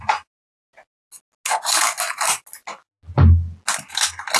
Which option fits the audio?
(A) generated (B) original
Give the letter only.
B